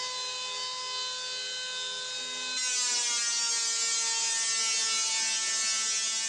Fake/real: real